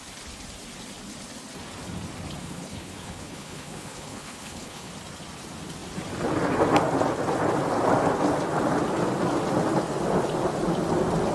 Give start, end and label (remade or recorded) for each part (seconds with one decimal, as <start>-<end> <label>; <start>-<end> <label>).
0.0-2.4 recorded; 2.4-4.9 remade; 4.9-11.3 recorded